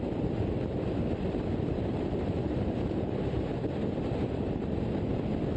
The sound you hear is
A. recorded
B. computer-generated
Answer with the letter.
B